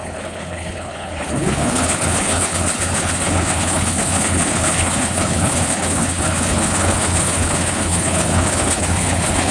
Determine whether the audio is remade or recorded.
remade